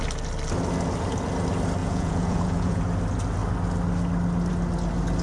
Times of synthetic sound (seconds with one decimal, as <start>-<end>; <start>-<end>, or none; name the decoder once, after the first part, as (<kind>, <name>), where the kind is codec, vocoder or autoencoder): 1.8-2.8 (vocoder, Vocos)